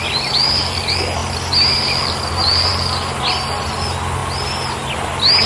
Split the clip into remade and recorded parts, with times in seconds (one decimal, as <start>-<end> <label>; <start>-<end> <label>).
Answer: 0.0-5.5 recorded